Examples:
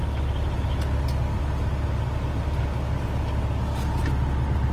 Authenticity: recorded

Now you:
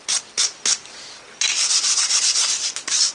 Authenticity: recorded